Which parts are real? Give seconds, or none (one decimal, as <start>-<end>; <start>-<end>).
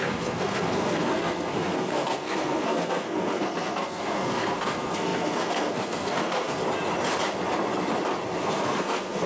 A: 6.6-8.4